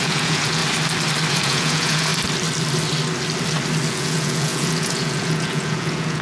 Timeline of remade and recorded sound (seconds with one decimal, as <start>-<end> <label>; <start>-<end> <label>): 0.0-0.6 remade; 0.6-1.3 recorded; 1.3-2.1 remade; 2.1-3.9 recorded; 3.9-6.2 remade